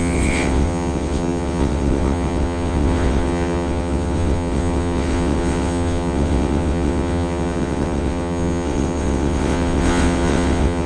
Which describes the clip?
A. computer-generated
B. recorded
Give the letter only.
A